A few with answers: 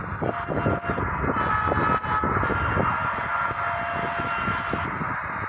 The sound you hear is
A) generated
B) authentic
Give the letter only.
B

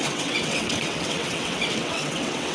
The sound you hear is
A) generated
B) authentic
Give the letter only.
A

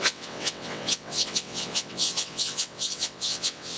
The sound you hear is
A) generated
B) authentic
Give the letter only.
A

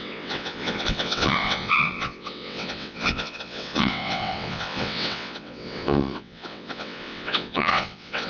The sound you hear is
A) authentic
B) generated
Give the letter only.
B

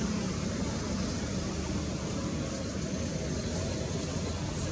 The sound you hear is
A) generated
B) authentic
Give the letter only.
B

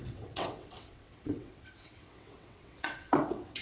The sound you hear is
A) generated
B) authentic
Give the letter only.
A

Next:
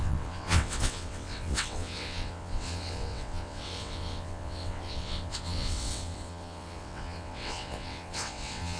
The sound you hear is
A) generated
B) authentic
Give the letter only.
A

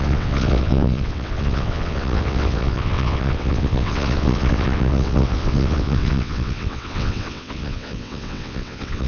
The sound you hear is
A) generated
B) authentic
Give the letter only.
A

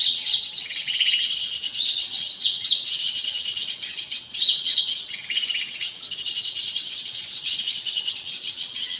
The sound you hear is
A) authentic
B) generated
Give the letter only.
B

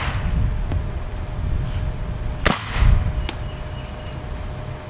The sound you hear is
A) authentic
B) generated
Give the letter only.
A